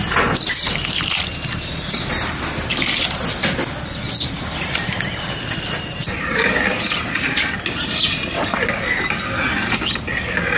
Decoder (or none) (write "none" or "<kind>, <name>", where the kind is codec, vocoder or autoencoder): none